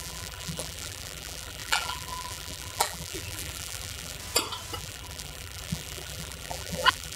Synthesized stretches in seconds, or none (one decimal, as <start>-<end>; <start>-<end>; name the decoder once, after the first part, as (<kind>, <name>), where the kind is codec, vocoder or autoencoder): 0.0-4.2 (vocoder, BigVGAN v2); 4.8-7.2